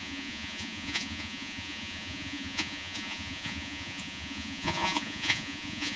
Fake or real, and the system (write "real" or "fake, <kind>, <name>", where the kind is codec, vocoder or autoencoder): fake, vocoder, Vocos